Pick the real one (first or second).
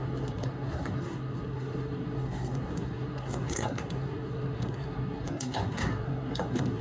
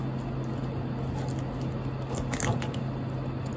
second